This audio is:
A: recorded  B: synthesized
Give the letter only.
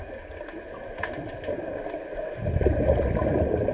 A